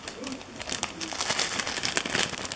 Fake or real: real